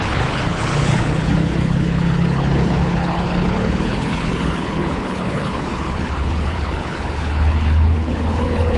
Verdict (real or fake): fake